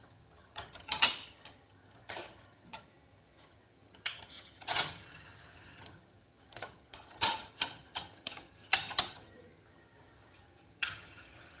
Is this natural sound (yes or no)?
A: no